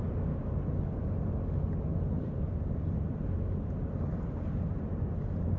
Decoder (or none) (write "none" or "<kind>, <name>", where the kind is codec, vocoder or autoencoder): none